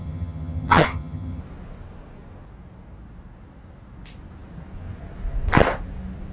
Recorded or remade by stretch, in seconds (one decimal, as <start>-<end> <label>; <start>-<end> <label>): 0.0-1.4 remade; 1.4-6.3 recorded